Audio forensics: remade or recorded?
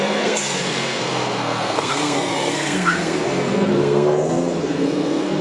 remade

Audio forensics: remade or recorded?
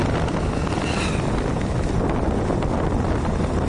recorded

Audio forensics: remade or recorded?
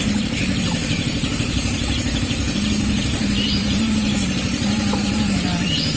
remade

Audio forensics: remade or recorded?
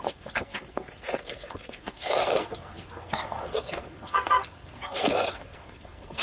remade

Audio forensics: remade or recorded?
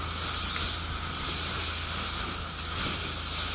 recorded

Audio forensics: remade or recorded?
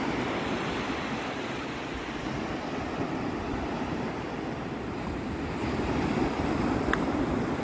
recorded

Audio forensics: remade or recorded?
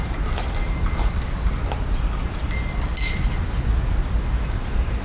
recorded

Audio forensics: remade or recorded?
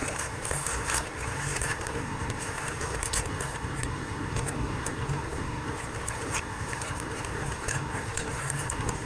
remade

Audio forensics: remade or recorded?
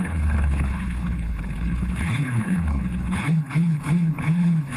remade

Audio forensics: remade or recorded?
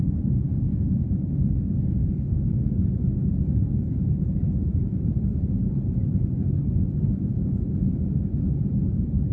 remade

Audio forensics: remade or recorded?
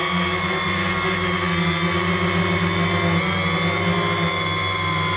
recorded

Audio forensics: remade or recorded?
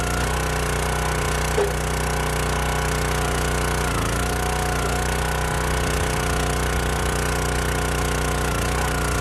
recorded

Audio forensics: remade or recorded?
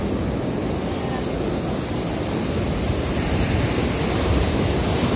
recorded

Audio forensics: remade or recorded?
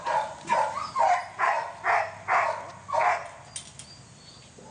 recorded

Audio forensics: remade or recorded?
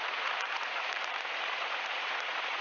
remade